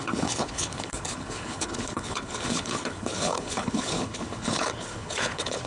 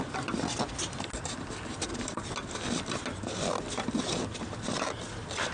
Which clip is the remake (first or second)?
first